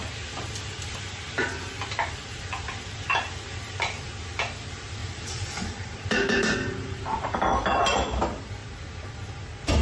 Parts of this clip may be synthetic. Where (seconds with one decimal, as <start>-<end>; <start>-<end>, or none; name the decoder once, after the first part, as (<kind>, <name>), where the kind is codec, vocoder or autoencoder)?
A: 5.0-7.4 (vocoder, BigVGAN v2)